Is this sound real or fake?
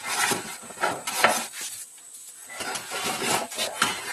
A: real